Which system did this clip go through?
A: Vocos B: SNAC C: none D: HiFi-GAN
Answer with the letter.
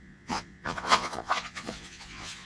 A